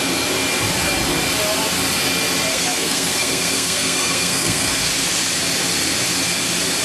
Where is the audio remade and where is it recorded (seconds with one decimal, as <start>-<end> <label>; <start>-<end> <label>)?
0.0-2.5 recorded; 2.5-4.9 remade; 4.9-6.8 recorded